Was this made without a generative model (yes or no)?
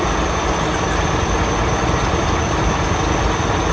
yes